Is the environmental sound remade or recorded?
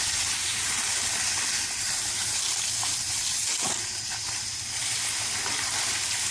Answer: recorded